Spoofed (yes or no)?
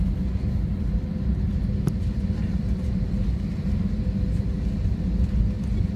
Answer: no